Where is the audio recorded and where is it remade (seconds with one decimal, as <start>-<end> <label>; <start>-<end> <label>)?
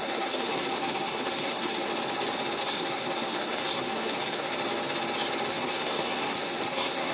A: 0.0-1.9 remade; 1.9-2.6 recorded; 2.6-4.5 remade; 4.5-5.5 recorded; 5.5-7.1 remade